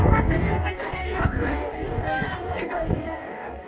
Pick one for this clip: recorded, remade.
remade